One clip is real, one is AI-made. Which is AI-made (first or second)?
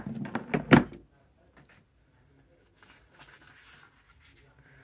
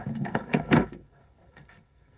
second